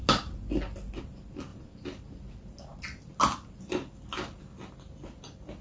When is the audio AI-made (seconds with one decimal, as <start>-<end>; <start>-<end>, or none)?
none